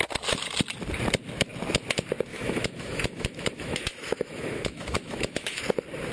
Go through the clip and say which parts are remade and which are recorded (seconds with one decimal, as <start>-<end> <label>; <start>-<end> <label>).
0.0-2.3 recorded; 2.3-5.6 remade; 5.6-6.1 recorded